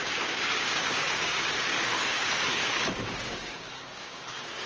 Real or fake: fake